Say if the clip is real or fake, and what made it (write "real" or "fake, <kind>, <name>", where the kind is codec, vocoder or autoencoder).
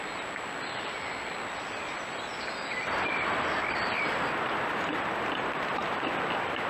real